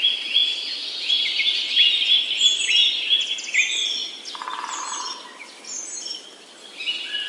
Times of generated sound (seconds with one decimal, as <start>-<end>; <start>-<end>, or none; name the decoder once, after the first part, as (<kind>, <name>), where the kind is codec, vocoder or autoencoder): none

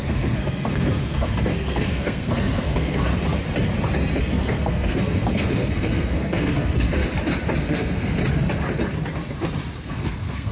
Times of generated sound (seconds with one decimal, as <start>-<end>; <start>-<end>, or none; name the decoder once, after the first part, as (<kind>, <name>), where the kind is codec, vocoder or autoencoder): 0.0-3.1 (codec, SNAC); 4.2-7.0; 7.6-8.2; 9.8-10.5

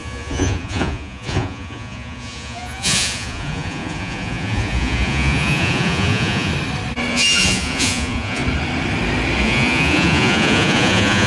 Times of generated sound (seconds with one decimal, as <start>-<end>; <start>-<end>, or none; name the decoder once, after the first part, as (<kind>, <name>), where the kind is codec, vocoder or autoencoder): 0.0-6.5 (vocoder, Vocos); 7.1-8.4; 9.4-11.3

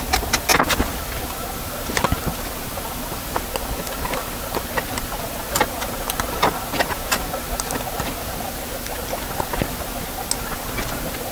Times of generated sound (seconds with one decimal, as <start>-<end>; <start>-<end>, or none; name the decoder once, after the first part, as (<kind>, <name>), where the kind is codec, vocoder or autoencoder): none

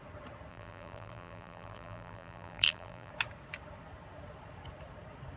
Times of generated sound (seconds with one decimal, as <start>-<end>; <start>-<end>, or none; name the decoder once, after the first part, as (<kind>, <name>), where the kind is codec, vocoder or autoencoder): 0.5-3.1 (vocoder, BigVGAN v2)

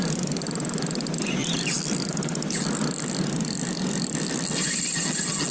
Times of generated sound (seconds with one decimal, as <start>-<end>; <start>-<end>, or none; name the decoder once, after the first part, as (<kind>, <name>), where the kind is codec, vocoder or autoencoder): 0.0-0.5 (vocoder, BigVGAN v2); 1.4-4.7